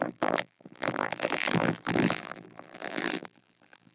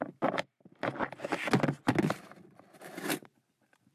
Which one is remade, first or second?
first